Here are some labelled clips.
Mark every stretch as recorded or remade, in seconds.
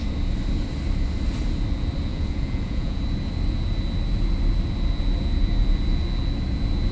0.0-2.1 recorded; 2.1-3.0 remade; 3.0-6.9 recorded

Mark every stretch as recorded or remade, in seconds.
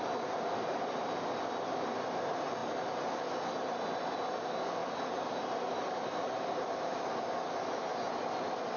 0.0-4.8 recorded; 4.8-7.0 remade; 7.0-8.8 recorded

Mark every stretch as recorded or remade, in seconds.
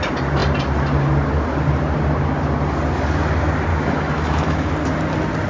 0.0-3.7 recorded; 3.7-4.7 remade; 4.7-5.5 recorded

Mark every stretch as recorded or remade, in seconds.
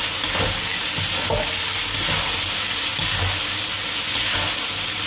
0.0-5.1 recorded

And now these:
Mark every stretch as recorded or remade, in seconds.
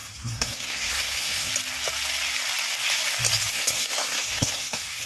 0.0-1.5 remade; 1.5-3.5 recorded; 3.5-5.1 remade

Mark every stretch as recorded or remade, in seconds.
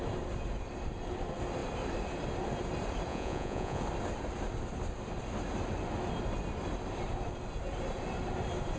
0.0-3.1 recorded; 3.1-3.8 remade; 3.8-8.8 recorded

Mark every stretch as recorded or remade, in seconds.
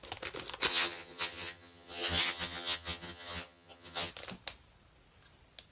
0.0-0.7 recorded; 0.7-4.1 remade; 4.1-5.7 recorded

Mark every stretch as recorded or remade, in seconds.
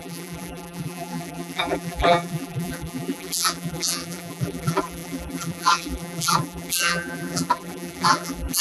0.0-8.6 remade